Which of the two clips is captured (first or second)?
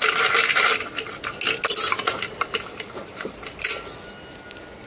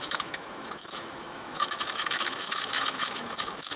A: first